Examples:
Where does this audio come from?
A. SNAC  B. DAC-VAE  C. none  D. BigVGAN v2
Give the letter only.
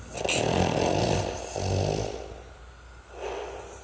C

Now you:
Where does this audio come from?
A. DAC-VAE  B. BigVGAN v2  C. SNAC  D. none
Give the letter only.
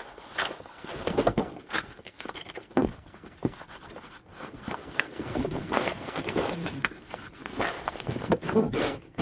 C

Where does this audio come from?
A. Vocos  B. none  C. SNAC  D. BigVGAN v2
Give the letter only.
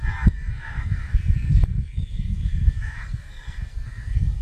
C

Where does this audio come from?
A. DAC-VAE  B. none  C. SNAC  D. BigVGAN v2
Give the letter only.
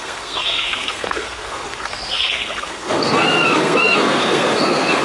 C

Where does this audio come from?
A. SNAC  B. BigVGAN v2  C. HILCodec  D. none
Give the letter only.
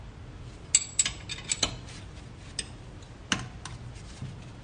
D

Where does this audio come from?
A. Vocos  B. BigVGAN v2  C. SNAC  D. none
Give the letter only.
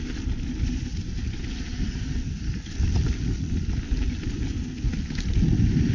D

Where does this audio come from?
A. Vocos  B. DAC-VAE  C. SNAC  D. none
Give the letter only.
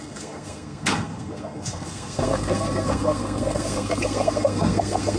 C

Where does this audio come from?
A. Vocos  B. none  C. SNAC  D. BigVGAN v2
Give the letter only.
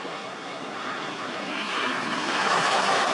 C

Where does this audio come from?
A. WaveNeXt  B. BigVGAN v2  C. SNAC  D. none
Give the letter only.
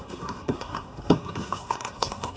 C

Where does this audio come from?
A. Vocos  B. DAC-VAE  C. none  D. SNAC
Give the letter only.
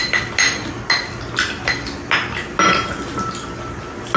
C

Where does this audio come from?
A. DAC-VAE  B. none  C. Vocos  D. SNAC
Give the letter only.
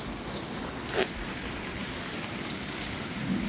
B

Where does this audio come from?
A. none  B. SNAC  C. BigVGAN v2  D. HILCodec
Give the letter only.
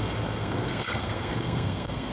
B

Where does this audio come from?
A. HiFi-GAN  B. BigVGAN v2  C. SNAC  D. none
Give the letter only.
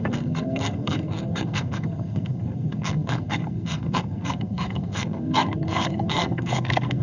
C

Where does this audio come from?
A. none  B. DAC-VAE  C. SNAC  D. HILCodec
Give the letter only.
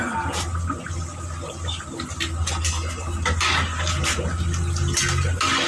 A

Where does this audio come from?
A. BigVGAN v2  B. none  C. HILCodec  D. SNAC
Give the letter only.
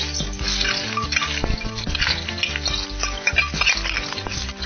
B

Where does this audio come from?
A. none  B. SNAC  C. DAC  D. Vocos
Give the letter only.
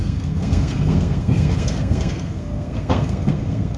B